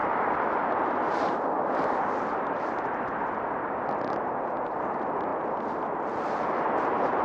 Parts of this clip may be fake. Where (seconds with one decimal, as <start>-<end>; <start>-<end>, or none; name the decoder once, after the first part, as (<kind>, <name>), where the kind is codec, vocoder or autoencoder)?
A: none